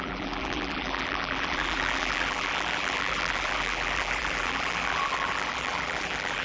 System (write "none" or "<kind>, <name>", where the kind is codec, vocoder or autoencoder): vocoder, BigVGAN v2